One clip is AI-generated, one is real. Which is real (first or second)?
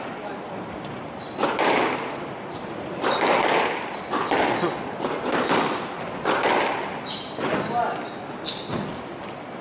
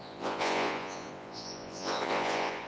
first